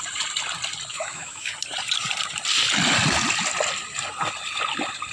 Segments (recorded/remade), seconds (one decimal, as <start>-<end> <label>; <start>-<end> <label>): 0.0-0.9 recorded; 0.9-1.5 remade; 1.5-5.1 recorded